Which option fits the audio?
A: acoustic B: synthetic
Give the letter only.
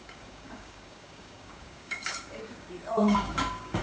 B